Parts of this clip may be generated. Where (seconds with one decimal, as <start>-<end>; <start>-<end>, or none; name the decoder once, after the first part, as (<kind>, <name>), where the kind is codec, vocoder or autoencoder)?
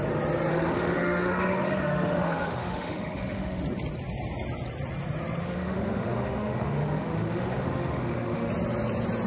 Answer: 0.5-3.6 (autoencoder, DAC-VAE); 5.4-8.5